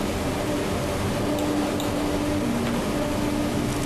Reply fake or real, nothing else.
real